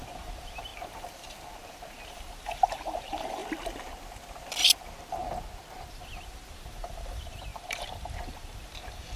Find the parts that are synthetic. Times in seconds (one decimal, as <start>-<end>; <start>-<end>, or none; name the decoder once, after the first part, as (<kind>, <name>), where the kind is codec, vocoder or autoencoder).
0.0-0.7 (vocoder, BigVGAN v2); 2.1-3.4; 5.9-9.2